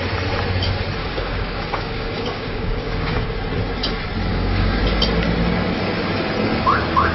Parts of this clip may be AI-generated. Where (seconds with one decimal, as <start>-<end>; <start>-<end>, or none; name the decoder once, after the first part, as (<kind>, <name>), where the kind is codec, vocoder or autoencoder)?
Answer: 1.0-3.3 (codec, DAC); 4.3-4.8